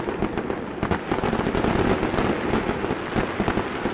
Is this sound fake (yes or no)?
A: no